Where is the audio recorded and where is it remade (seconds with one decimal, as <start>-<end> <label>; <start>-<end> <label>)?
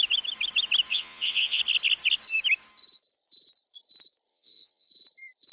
0.0-0.9 recorded; 0.9-1.6 remade; 1.6-4.3 recorded; 4.3-4.9 remade; 4.9-5.5 recorded